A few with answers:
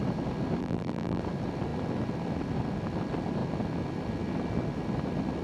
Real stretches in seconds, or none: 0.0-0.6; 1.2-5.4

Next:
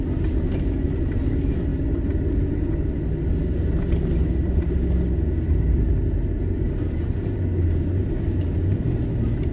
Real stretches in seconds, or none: 0.0-9.5

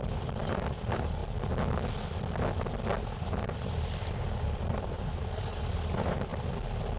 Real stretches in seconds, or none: 1.2-3.0; 6.3-7.0

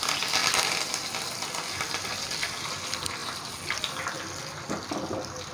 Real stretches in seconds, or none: 0.0-3.2; 3.8-5.5

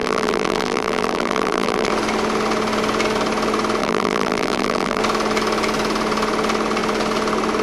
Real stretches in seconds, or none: 1.9-3.8; 5.0-7.6

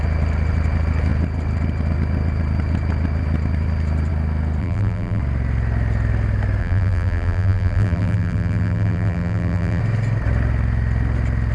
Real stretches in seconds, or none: 0.0-4.6; 5.2-6.6; 9.8-11.5

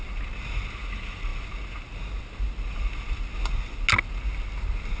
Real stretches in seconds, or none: 0.0-5.0

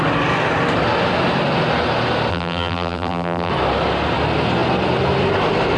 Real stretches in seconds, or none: 0.0-2.3; 3.5-5.8